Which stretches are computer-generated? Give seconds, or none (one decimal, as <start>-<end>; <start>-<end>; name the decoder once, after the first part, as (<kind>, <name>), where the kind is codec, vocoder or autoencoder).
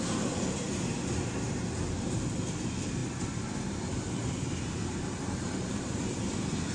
none